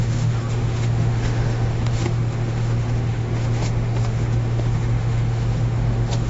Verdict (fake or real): fake